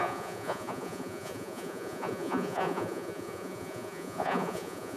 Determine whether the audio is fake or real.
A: fake